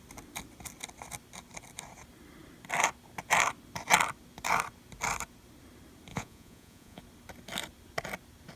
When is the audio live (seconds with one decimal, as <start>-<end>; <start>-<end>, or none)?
0.0-6.1; 7.0-8.6